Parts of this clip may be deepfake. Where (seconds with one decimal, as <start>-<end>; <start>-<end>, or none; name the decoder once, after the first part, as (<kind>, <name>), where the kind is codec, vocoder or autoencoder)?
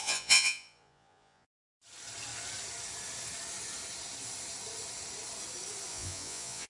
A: 0.0-1.8 (vocoder, Vocos); 5.9-6.7